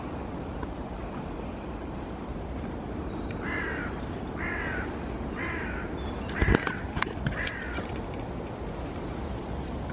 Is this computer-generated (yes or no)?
no